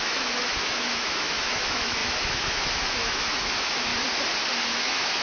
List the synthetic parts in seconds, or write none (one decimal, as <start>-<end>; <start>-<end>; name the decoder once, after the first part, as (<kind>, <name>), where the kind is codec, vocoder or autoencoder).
0.0-3.9 (autoencoder, DAC-VAE); 4.7-5.2